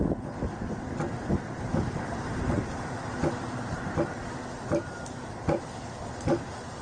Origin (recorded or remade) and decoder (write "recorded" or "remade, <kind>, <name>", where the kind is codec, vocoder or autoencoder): recorded